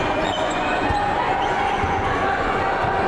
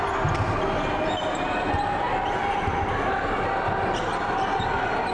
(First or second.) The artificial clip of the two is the first